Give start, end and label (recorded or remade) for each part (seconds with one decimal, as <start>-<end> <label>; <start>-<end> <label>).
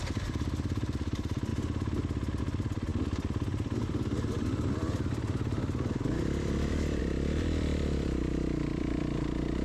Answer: 0.0-1.5 remade; 1.5-2.4 recorded; 2.4-9.6 remade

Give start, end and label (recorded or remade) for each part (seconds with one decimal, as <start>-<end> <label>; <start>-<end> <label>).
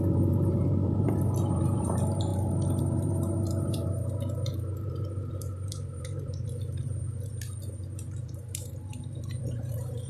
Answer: 0.0-2.3 remade; 2.3-2.8 recorded; 2.8-10.1 remade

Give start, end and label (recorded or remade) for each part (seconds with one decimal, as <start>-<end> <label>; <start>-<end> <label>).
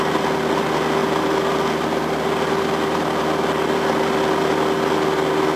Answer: 0.0-5.6 recorded